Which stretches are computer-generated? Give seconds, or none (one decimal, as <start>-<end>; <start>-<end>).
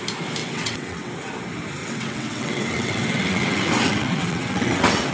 0.4-1.1; 1.8-5.1